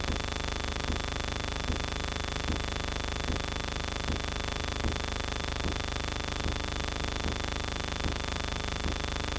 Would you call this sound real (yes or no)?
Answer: yes